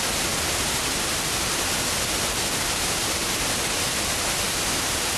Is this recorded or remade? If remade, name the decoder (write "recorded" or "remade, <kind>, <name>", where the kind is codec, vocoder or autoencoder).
recorded